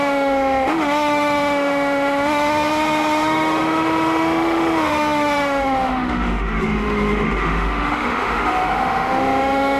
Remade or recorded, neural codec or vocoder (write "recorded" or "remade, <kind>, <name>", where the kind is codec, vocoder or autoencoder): remade, autoencoder, DAC-VAE